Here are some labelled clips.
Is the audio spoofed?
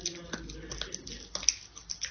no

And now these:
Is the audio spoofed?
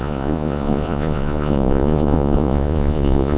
yes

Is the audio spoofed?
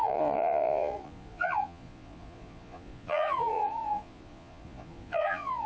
yes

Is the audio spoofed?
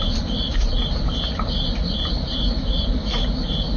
yes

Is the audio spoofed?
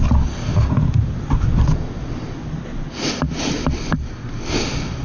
no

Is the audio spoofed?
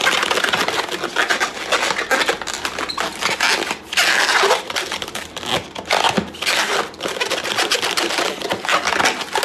no